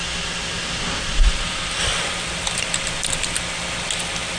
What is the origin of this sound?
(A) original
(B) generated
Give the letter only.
A